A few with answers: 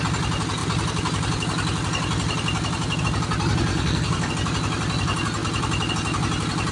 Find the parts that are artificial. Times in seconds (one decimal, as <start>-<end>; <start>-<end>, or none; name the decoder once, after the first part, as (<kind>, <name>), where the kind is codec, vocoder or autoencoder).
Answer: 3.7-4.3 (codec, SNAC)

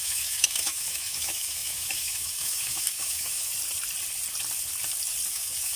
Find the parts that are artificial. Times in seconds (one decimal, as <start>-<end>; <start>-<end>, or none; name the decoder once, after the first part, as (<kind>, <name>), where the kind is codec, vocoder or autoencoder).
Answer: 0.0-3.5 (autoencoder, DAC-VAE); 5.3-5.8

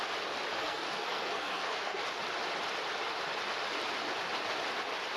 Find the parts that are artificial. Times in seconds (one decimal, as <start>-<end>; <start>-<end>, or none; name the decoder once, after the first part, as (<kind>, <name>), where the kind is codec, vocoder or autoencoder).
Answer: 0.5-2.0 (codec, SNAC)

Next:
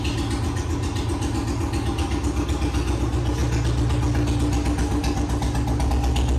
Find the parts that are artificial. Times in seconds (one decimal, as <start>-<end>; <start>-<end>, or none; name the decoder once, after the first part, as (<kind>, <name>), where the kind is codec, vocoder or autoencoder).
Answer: none

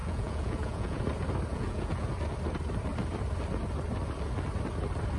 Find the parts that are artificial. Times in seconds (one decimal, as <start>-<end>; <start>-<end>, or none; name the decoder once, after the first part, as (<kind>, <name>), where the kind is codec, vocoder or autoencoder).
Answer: 0.0-1.0 (vocoder, Vocos); 1.5-2.1

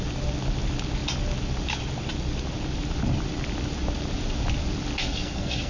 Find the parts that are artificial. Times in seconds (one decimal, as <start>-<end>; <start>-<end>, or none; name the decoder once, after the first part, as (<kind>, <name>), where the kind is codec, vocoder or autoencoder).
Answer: 5.0-5.7 (codec, SNAC)

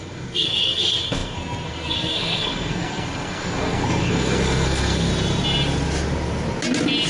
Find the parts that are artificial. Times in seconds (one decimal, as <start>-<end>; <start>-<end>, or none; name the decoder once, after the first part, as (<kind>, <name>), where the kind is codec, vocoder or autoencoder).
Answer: 0.0-5.1 (codec, SNAC)

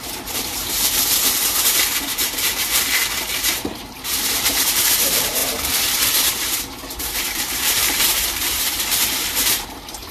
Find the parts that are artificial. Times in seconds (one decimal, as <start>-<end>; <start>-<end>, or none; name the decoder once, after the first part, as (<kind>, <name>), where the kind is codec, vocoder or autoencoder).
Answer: 0.0-5.4 (vocoder, BigVGAN v2); 7.0-10.1